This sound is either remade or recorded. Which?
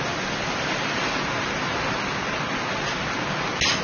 recorded